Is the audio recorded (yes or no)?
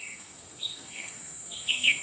no